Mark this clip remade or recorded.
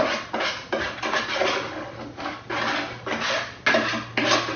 recorded